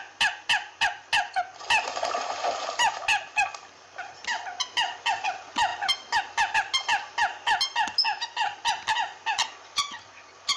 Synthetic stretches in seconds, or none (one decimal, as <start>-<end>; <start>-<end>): none